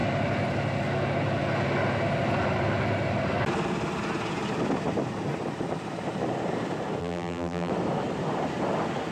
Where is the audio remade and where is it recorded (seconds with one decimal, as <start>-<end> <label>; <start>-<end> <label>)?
0.0-7.0 recorded; 7.0-7.7 remade; 7.7-9.1 recorded